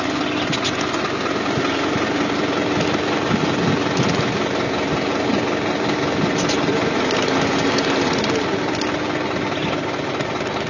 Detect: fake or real real